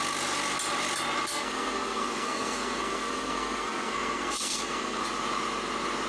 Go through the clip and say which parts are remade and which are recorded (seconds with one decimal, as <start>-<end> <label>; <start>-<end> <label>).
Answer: 0.0-1.3 recorded; 1.3-5.0 remade; 5.0-6.1 recorded